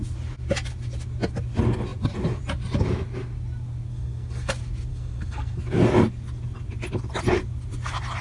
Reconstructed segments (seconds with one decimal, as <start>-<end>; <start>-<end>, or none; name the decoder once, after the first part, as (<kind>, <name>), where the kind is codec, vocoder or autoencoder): 3.9-4.5 (codec, SNAC); 4.9-5.6